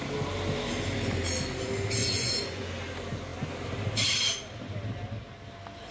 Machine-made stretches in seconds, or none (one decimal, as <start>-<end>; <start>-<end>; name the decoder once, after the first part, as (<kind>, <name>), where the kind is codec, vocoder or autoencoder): 2.0-2.7 (vocoder, Vocos)